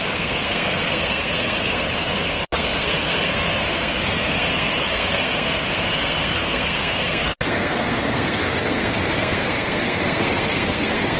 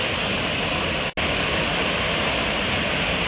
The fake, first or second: first